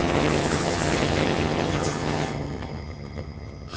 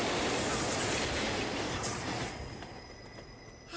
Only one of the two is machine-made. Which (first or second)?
first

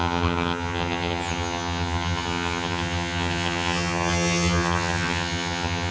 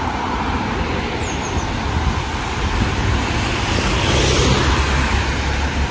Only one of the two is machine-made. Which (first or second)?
first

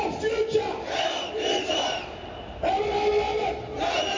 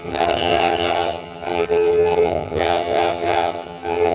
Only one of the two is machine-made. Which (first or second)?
second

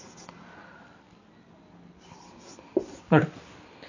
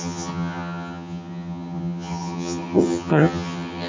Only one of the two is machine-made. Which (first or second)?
second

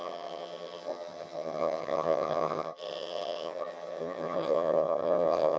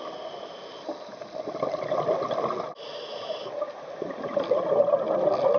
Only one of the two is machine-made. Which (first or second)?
first